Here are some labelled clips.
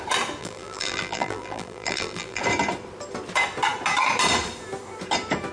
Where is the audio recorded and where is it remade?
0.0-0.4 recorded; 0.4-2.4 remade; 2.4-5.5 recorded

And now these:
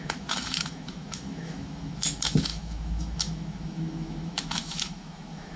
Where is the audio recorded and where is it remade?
0.0-5.6 remade